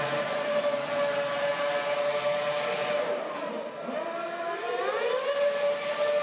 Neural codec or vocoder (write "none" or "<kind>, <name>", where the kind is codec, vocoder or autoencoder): none